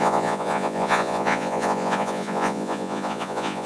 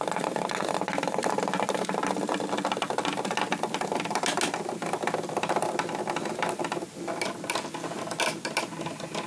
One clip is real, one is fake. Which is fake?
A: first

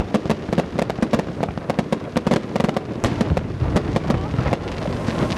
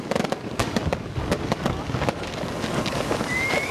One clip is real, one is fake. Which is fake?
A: second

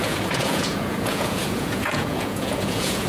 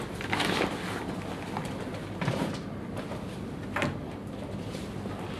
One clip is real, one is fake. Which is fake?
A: first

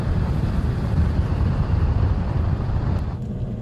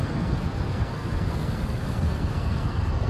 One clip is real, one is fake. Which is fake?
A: second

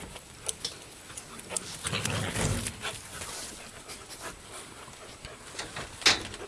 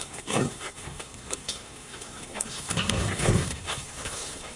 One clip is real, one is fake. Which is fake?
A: second